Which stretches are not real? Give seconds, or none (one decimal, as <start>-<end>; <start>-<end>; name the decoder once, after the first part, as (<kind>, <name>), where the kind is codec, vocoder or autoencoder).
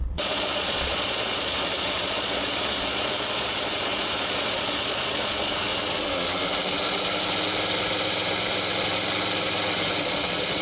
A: 0.0-5.7 (vocoder, Vocos); 10.0-10.6